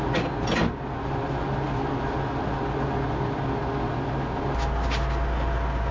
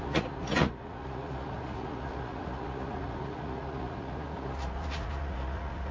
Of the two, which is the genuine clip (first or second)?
first